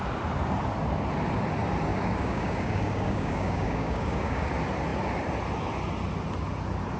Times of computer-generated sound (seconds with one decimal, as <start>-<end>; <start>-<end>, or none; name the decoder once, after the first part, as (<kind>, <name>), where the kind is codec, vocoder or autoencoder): 1.9-4.4 (codec, DAC)